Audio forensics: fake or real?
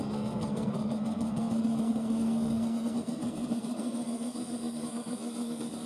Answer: fake